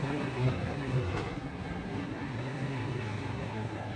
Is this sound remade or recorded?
remade